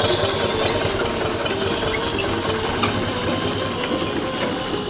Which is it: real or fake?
real